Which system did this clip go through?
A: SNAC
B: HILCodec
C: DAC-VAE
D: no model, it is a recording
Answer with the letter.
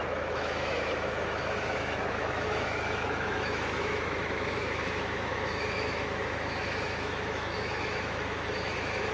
C